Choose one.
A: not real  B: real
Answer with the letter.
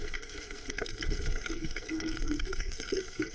A